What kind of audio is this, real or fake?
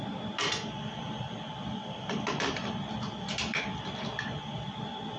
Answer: real